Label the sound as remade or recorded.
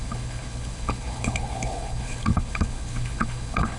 remade